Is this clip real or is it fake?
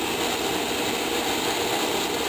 real